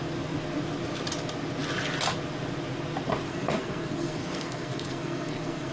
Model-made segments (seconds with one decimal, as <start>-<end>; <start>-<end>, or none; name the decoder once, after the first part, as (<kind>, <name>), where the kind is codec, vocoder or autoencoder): 3.3-5.7 (codec, SNAC)